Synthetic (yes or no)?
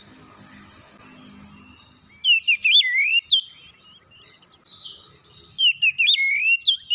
no